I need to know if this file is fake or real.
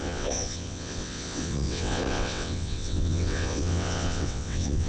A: fake